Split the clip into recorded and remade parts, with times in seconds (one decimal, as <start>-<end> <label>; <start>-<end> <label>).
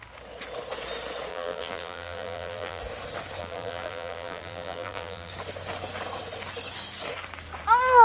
0.0-1.3 recorded; 1.3-2.8 remade; 2.8-3.4 recorded; 3.4-5.3 remade; 5.3-8.0 recorded